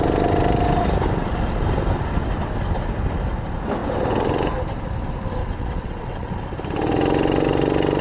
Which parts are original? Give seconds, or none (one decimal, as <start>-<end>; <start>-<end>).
0.0-5.4; 6.3-8.0